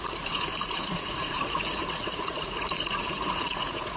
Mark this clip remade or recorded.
remade